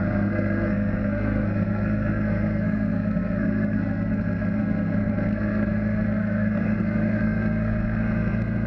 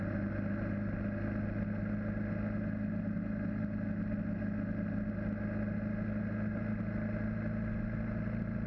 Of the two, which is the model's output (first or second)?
first